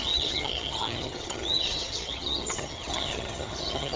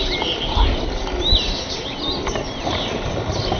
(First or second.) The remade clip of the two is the first